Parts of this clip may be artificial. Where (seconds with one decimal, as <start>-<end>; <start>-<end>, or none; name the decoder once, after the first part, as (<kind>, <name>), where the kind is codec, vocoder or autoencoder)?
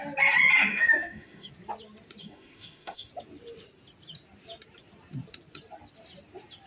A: 0.7-1.5 (autoencoder, DAC-VAE); 2.2-3.1